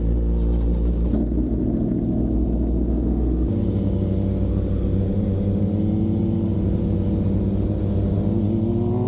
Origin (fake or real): real